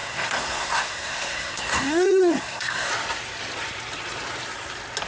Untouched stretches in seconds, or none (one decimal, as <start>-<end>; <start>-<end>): 2.9-5.1